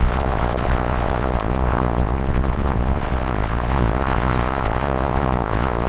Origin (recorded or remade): remade